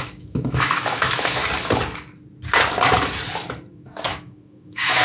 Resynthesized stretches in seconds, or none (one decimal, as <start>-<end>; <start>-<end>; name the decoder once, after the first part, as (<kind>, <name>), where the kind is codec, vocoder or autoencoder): 0.0-1.4 (autoencoder, DAC-VAE); 3.7-5.0